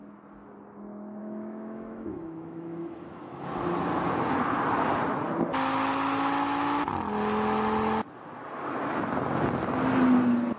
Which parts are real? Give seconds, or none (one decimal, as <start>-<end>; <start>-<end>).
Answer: 0.0-1.2; 3.4-10.6